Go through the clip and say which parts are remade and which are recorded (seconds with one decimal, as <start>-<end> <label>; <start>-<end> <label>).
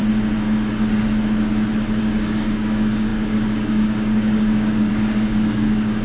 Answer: 0.0-2.0 recorded; 2.0-6.0 remade